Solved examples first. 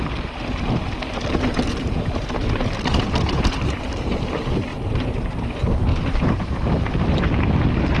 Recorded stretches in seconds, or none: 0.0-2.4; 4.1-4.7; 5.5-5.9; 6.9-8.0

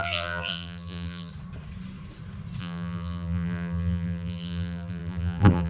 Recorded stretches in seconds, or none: 1.3-2.6

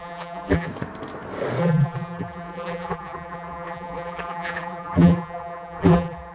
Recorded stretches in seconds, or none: 0.7-1.6

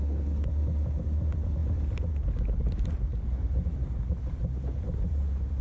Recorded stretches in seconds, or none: 0.0-1.6; 2.1-3.1

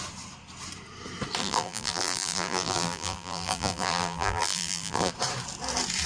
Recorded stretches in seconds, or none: 0.0-1.4; 5.1-6.1